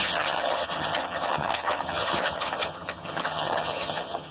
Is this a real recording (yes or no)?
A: no